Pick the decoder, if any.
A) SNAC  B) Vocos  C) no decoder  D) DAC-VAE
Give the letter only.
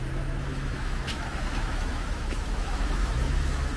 D